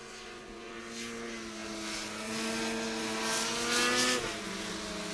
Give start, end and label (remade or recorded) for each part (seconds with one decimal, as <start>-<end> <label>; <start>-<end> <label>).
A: 0.0-0.8 remade; 0.8-5.1 recorded